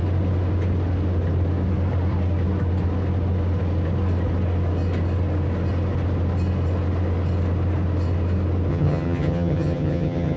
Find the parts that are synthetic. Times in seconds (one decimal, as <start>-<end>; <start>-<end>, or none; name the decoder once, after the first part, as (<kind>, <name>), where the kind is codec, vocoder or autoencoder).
8.7-10.4 (vocoder, HiFi-GAN)